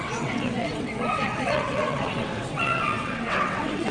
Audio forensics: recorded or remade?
remade